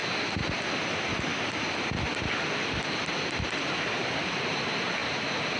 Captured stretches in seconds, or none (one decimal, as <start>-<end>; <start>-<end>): 0.0-5.6